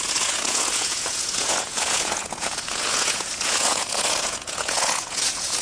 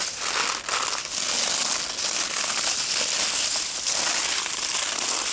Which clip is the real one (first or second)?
second